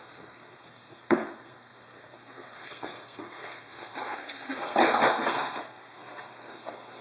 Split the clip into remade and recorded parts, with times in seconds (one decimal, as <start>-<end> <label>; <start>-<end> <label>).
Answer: 0.0-7.0 remade